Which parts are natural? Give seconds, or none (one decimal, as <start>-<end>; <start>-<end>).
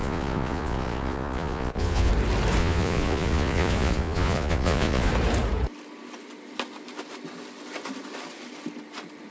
2.1-2.6; 5.1-9.3